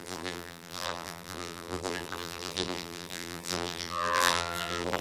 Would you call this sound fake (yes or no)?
yes